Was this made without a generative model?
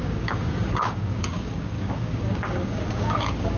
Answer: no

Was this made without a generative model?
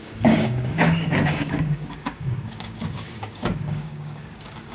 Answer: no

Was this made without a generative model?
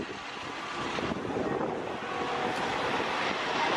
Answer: yes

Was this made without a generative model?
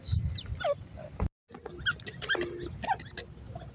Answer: yes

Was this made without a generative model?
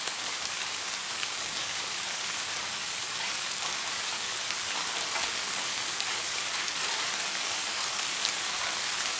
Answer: no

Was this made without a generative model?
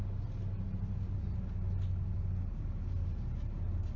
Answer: yes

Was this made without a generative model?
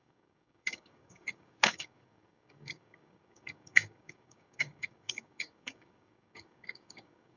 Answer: no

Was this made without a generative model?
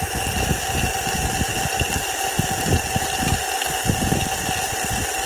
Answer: yes